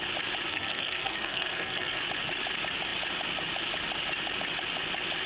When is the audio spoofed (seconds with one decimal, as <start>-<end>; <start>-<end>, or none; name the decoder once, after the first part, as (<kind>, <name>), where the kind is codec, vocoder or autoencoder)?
0.5-2.0 (codec, SNAC)

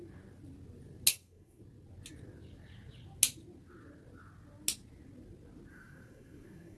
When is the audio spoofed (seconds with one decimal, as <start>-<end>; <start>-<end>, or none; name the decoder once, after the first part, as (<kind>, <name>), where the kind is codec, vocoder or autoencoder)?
1.1-1.6 (codec, SNAC); 5.7-6.8

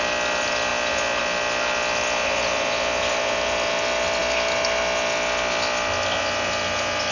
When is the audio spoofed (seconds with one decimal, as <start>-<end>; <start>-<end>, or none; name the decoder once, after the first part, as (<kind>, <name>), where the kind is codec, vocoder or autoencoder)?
none